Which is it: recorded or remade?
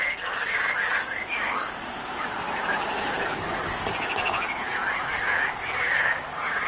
recorded